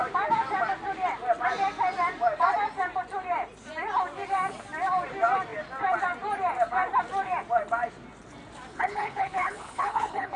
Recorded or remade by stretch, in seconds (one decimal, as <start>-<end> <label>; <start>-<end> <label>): 0.0-8.7 recorded; 8.7-10.4 remade